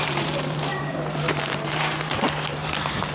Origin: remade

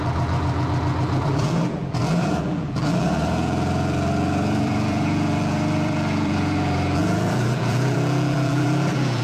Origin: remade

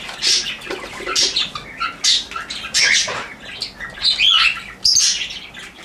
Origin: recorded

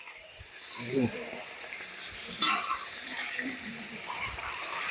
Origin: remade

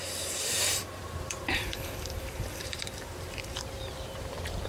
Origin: remade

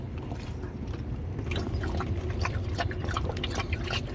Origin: remade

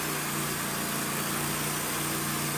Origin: recorded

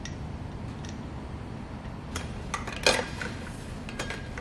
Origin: recorded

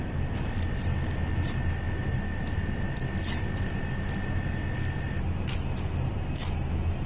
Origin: recorded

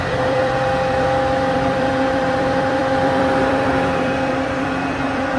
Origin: remade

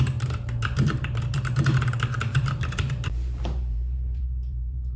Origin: remade